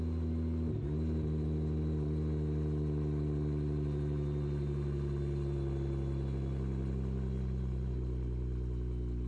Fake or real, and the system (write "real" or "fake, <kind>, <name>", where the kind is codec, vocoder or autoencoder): real